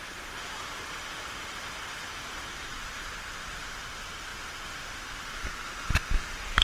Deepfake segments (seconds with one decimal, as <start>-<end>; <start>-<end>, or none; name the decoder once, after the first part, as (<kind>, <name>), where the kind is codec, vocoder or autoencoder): none